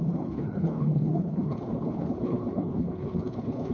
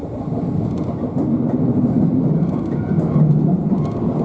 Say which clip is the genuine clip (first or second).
second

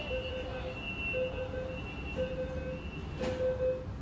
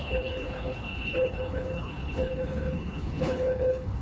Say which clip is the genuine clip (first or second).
first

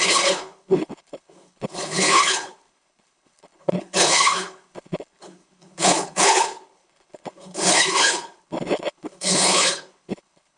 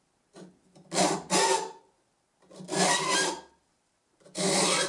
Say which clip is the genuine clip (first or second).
second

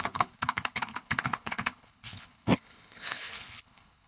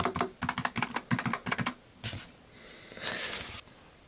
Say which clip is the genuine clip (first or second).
second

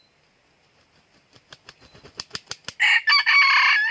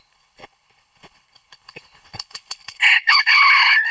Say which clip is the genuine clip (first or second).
first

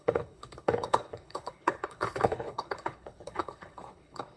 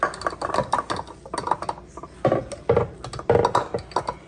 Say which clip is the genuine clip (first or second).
second